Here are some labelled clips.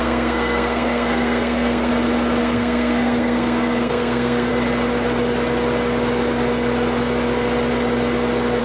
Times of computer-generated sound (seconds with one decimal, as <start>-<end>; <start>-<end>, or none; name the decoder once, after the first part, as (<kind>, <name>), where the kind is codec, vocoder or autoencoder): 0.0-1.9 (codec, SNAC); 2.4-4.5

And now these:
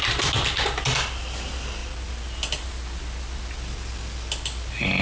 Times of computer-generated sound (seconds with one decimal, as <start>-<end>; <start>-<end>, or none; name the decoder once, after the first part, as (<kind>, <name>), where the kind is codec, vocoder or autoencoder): none

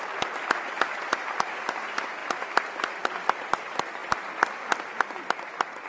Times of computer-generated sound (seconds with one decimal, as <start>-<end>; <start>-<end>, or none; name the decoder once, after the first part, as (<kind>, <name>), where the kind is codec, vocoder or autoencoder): none

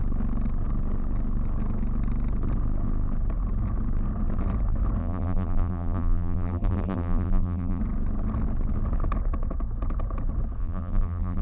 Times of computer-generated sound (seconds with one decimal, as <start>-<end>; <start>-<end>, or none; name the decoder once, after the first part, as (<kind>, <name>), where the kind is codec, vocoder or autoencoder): 5.0-7.8 (vocoder, BigVGAN v2); 10.6-11.4

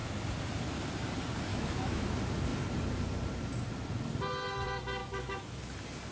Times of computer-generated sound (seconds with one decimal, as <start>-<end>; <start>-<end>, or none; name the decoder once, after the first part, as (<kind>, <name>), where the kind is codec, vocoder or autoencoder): 1.5-2.1 (autoencoder, DAC-VAE); 5.0-5.6

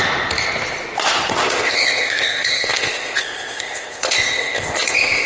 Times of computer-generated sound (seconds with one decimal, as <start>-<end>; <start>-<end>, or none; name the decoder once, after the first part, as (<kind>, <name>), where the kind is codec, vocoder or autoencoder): 1.3-5.3 (codec, ZipCodec)

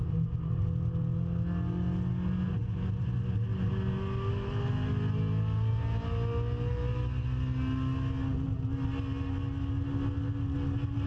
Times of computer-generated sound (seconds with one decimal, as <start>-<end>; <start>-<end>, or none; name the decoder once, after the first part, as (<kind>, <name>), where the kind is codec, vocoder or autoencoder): none